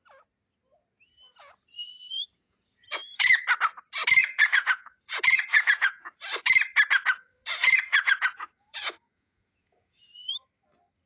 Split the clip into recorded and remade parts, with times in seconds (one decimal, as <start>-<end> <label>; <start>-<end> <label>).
0.0-1.4 recorded; 1.4-3.4 remade; 3.4-4.2 recorded; 4.2-6.2 remade; 6.2-7.5 recorded; 7.5-10.3 remade; 10.3-11.1 recorded